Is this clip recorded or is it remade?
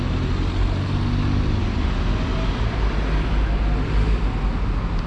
recorded